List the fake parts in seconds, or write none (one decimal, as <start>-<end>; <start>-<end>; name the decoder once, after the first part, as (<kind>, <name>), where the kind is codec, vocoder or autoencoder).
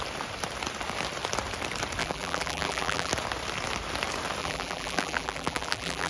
2.0-3.1 (vocoder, BigVGAN v2); 4.4-6.1